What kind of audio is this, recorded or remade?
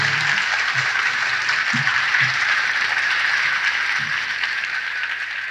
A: remade